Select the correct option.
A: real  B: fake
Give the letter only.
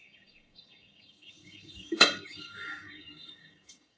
B